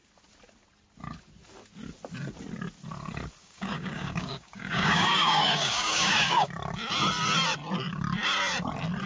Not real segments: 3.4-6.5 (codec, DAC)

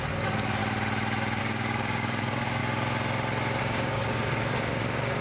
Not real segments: 0.0-0.6 (codec, DAC); 1.4-2.6; 3.6-5.2

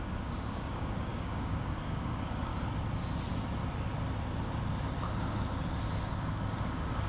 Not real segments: 0.0-2.5 (codec, DAC); 6.1-7.1

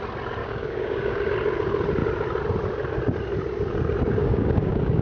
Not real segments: 0.4-1.2 (codec, DAC); 4.2-5.0